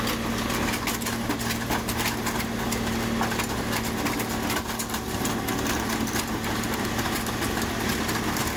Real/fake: real